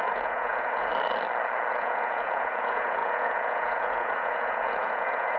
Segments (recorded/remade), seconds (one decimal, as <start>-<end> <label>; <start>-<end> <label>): 0.0-0.9 remade; 0.9-1.7 recorded; 1.7-5.4 remade